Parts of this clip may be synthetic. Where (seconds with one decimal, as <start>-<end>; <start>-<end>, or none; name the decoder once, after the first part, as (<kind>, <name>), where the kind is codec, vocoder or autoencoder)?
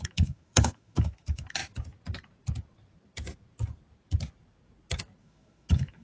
0.0-1.6 (autoencoder, DAC-VAE); 5.2-6.0